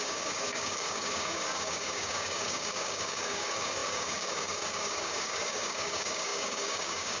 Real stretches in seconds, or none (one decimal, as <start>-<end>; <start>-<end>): none